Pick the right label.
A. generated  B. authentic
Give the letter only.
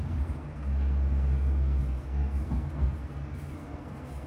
A